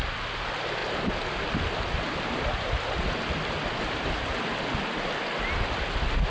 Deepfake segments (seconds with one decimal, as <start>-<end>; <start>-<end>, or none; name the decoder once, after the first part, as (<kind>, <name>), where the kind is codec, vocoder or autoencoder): none

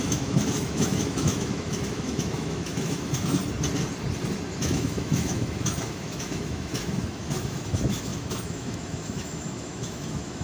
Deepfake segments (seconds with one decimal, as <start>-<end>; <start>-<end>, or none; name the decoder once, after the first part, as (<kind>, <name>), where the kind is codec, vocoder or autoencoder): 0.0-3.4 (autoencoder, DAC-VAE); 4.6-10.4

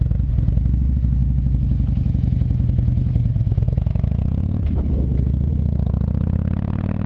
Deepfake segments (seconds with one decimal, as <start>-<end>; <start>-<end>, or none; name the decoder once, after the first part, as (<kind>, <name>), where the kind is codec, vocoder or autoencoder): 1.2-5.5 (autoencoder, DAC-VAE)

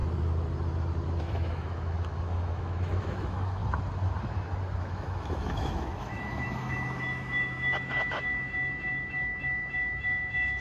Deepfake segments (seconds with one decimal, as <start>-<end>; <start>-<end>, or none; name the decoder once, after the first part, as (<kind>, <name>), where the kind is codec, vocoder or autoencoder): 1.2-3.6 (autoencoder, DAC-VAE); 4.8-10.6